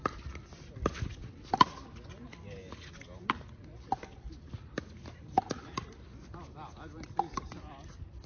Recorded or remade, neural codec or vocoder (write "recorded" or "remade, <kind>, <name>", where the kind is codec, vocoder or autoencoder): remade, vocoder, BigVGAN v2